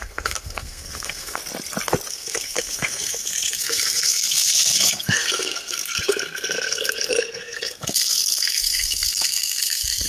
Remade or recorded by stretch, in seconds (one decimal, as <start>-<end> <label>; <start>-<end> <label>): 0.0-1.4 remade; 1.4-2.1 recorded; 2.1-10.1 remade